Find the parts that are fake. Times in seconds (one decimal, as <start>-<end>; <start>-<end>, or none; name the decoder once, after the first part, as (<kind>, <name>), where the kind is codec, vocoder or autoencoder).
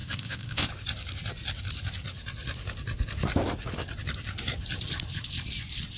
0.0-0.7 (codec, ZipCodec)